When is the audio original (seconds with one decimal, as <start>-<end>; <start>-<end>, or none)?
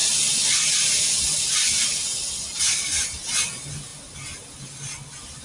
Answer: 0.0-5.4